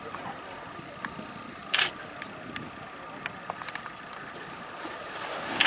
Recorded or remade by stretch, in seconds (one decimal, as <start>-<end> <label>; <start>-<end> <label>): 0.0-5.7 recorded